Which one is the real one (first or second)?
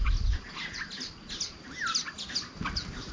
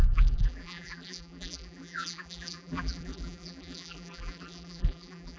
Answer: first